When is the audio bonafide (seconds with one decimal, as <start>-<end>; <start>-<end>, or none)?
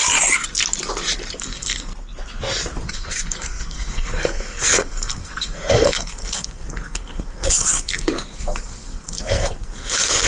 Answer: 0.0-1.4; 1.9-2.9